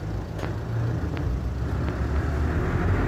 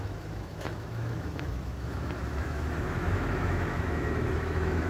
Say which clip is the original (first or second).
first